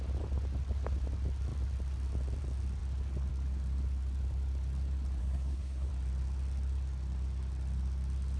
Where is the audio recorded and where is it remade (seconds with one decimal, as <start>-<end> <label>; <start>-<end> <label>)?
0.0-5.2 recorded; 5.2-5.9 remade; 5.9-8.4 recorded